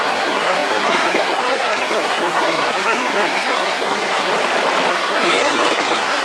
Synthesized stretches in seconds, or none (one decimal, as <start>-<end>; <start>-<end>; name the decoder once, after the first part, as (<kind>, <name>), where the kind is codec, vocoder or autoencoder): 0.0-4.3 (codec, SNAC); 4.9-6.2